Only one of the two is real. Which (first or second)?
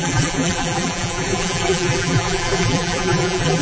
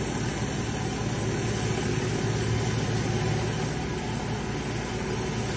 second